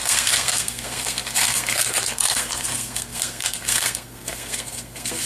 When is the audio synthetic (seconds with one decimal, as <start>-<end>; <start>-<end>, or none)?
0.0-5.2